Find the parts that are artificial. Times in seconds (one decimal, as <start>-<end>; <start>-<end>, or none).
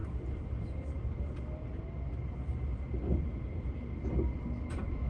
none